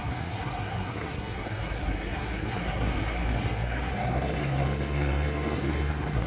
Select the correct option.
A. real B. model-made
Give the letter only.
B